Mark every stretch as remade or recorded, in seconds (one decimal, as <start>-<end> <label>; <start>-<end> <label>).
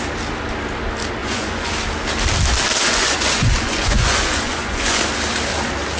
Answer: 0.0-1.2 recorded; 1.2-1.7 remade; 1.7-2.8 recorded; 2.8-5.0 remade; 5.0-6.0 recorded